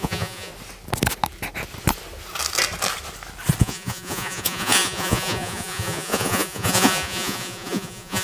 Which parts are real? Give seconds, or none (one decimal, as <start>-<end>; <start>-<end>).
0.5-3.6